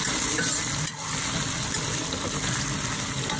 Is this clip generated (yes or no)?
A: no